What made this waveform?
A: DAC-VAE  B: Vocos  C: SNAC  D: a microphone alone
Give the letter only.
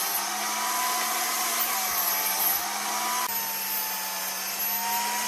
D